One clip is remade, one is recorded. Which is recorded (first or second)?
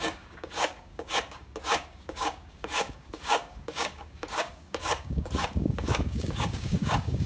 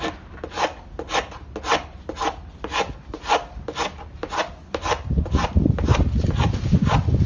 second